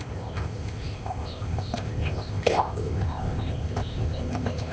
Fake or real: fake